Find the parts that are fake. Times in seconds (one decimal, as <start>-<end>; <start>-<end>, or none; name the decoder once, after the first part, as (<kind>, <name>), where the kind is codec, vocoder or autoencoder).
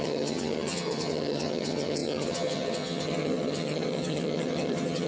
0.0-5.1 (vocoder, HiFi-GAN)